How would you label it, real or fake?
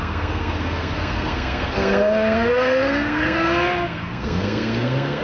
fake